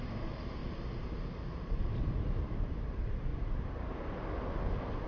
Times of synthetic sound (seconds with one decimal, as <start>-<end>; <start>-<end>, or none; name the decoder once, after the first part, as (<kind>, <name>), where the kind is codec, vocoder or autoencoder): 0.0-0.6 (vocoder, BigVGAN v2); 1.9-3.3